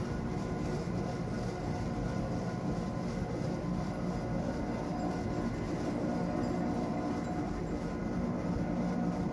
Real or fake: real